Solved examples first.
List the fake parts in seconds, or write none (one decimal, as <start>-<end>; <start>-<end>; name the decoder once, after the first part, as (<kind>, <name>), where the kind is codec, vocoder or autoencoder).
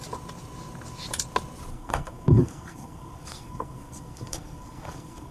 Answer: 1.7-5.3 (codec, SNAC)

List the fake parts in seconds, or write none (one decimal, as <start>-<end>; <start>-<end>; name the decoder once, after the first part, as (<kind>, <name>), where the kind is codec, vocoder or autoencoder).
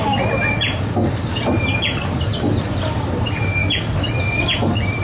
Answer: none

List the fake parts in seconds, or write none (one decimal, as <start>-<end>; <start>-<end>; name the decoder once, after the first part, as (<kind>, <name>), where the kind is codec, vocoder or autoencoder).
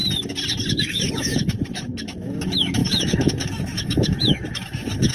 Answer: 0.7-5.1 (autoencoder, DAC-VAE)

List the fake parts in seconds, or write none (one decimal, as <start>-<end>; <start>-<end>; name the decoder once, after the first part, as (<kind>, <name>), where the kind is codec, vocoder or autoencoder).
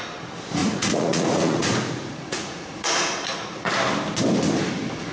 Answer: 0.6-3.7 (vocoder, Vocos)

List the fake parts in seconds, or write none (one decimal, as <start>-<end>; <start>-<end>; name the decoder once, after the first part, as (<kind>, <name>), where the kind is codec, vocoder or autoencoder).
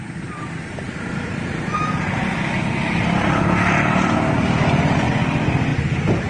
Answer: none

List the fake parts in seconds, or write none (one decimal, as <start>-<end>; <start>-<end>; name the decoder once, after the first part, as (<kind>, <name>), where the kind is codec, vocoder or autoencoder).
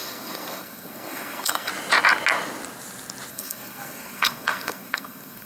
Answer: 0.0-1.7 (codec, SNAC); 3.3-5.5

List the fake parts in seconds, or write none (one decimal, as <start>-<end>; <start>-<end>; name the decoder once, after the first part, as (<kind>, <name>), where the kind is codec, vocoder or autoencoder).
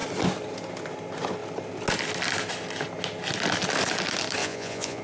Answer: 4.4-5.0 (vocoder, Vocos)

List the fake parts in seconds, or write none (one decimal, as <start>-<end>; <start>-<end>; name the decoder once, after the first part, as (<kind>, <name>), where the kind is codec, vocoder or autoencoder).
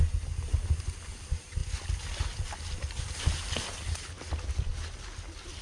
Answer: none